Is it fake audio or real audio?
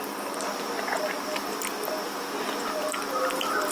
real